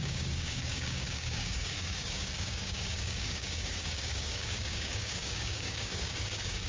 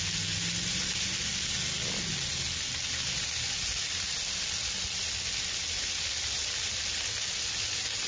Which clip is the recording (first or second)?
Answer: second